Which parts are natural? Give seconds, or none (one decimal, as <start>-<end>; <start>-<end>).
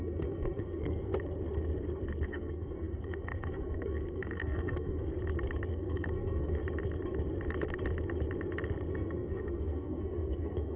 1.1-2.3; 5.1-5.7; 6.6-8.9